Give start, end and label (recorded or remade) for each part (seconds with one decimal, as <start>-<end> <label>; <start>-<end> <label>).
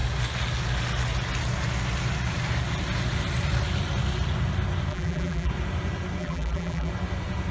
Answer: 0.0-4.9 recorded; 4.9-5.5 remade; 5.5-6.2 recorded; 6.2-6.9 remade; 6.9-7.5 recorded